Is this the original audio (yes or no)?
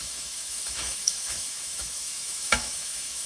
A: no